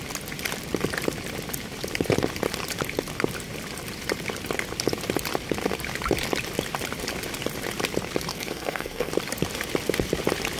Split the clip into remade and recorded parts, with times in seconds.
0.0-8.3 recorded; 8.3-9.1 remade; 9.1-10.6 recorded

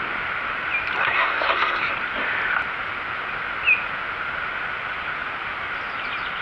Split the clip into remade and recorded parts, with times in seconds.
0.0-1.0 recorded; 1.0-1.9 remade; 1.9-6.4 recorded

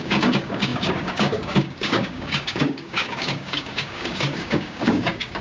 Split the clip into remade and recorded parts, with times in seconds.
0.0-5.4 remade

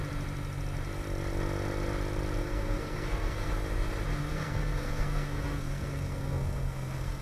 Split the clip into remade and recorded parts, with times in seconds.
0.0-2.4 recorded; 2.4-3.5 remade; 3.5-4.1 recorded; 4.1-7.2 remade

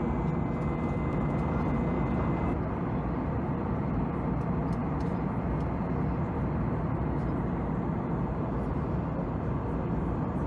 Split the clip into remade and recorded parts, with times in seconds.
0.0-10.5 recorded

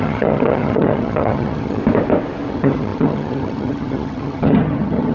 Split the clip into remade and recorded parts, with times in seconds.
0.0-1.8 remade; 1.8-2.5 recorded; 2.5-5.1 remade